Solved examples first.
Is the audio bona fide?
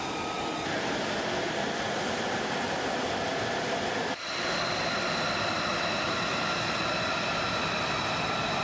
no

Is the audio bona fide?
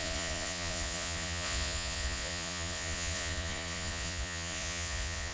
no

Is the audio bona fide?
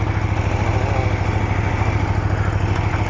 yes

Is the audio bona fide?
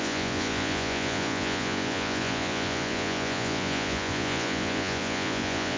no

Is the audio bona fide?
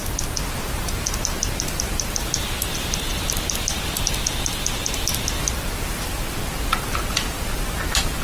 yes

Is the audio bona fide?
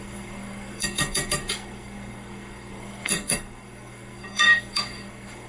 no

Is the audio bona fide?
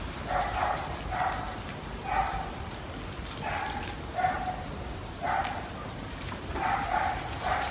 yes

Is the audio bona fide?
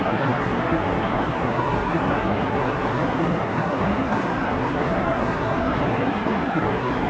no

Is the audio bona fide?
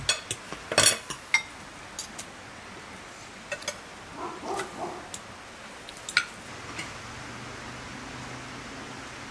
yes